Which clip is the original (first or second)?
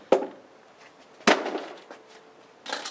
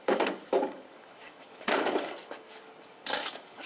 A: first